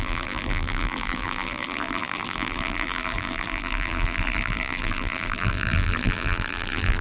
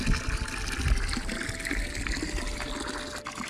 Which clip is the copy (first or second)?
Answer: first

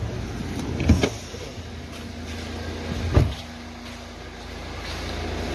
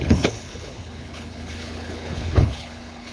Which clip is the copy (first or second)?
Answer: second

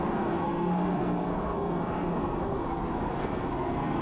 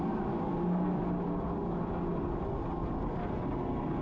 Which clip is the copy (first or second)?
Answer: first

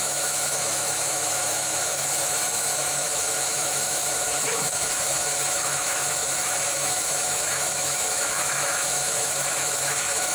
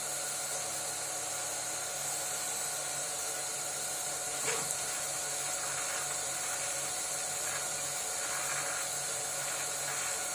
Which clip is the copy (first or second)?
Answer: first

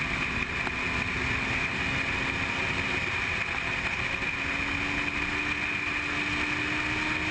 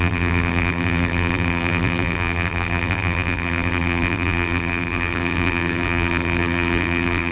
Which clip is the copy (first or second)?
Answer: second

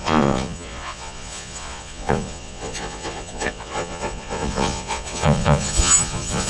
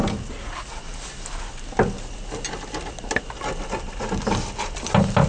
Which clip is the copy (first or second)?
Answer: first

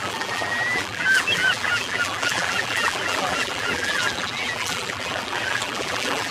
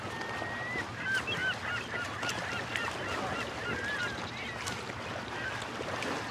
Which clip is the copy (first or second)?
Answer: first